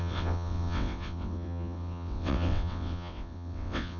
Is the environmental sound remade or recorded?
remade